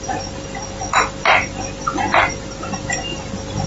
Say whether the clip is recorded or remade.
recorded